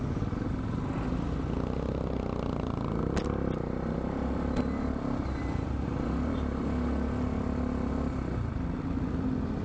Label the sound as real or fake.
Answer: real